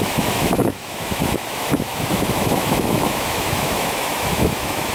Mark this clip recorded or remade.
remade